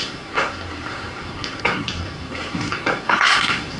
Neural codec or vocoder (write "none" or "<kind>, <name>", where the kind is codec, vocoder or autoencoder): codec, SNAC